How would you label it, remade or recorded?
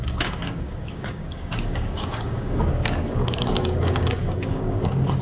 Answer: remade